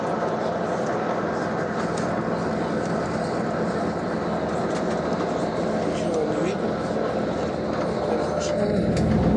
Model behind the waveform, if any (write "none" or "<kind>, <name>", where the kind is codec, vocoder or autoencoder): none